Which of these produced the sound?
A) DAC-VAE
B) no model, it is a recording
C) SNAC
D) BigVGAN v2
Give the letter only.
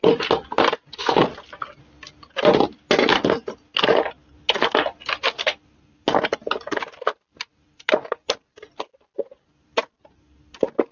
B